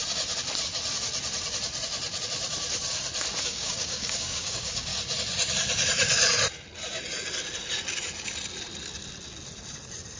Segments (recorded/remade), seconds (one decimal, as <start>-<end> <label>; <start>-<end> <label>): 0.0-3.4 recorded; 3.4-4.9 remade; 4.9-10.2 recorded